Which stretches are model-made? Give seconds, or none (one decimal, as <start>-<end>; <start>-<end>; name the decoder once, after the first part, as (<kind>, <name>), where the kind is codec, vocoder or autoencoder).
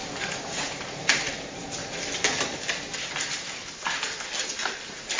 0.0-1.8 (vocoder, BigVGAN v2)